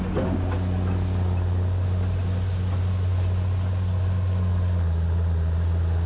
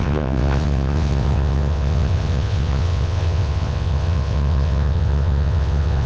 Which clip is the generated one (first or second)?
second